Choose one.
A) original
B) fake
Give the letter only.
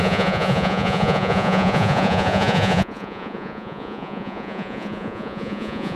B